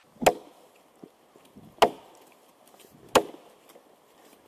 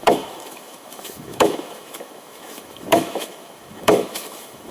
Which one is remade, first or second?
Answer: second